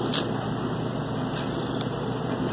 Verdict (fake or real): fake